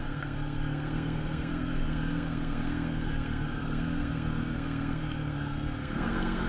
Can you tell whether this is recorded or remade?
remade